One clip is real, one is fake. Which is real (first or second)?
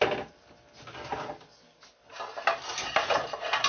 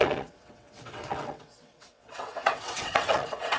first